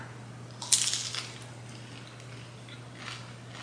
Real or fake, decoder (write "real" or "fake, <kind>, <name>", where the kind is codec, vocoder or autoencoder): real